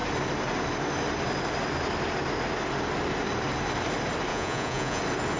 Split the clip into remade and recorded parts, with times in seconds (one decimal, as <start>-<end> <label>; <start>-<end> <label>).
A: 0.0-4.3 recorded; 4.3-5.0 remade; 5.0-5.4 recorded

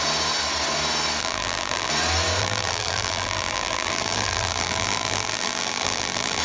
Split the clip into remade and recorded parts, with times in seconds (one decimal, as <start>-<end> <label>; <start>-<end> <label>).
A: 0.0-1.2 recorded; 1.2-1.9 remade; 1.9-2.4 recorded; 2.4-6.4 remade

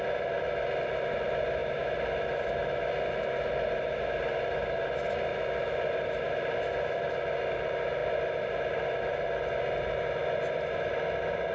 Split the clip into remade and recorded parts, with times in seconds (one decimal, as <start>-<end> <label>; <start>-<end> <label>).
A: 0.0-11.5 recorded